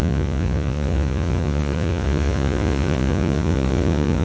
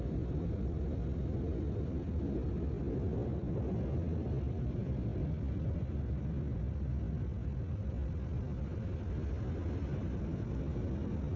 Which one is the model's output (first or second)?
first